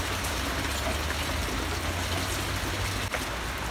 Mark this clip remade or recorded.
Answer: recorded